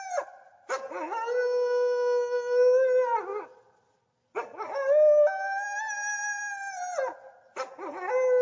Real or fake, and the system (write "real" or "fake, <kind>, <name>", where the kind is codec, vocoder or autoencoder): real